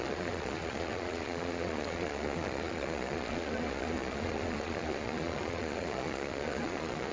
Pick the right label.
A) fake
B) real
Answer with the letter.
A